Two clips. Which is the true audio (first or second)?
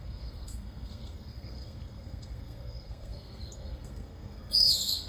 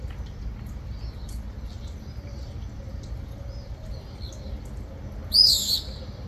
second